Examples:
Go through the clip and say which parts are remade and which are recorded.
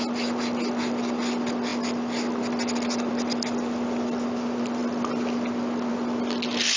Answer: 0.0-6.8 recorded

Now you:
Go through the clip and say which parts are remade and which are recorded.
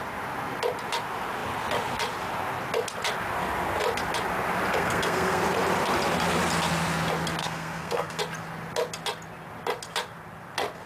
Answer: 0.0-4.7 recorded; 4.7-5.4 remade; 5.4-7.4 recorded; 7.4-8.2 remade; 8.2-10.9 recorded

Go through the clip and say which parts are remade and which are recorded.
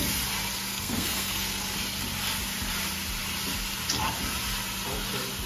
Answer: 0.0-0.7 recorded; 0.7-1.6 remade; 1.6-5.5 recorded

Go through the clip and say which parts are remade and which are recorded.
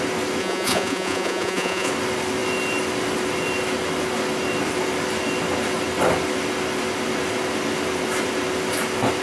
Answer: 0.0-0.4 recorded; 0.4-1.9 remade; 1.9-9.2 recorded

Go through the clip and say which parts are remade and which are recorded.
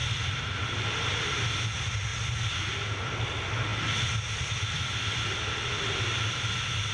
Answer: 0.0-6.9 recorded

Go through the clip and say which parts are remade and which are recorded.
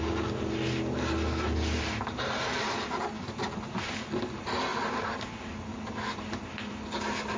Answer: 0.0-4.7 recorded; 4.7-5.3 remade; 5.3-5.7 recorded; 5.7-6.7 remade; 6.7-7.4 recorded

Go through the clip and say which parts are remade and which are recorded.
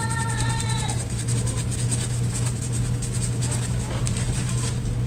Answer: 0.0-1.9 remade; 1.9-4.0 recorded; 4.0-5.1 remade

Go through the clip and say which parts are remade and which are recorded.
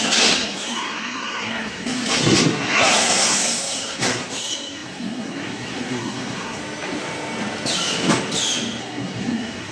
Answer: 0.0-6.6 remade; 6.6-8.8 recorded; 8.8-9.7 remade